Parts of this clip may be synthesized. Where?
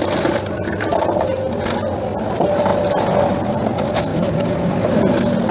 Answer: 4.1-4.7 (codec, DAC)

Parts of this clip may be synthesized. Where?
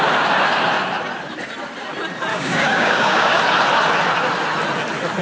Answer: 2.3-3.4 (codec, DAC)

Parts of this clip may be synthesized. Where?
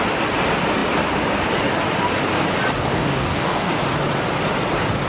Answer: 2.9-3.8 (codec, DAC)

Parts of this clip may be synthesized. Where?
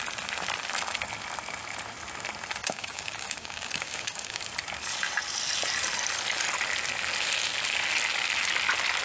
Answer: 2.6-4.4 (codec, DAC)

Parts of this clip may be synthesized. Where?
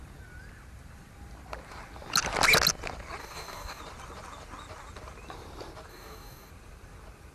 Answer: 3.2-3.8 (codec, DAC); 5.9-6.5